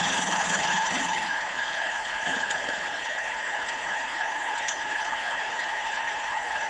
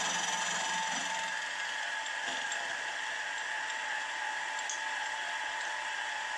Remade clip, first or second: first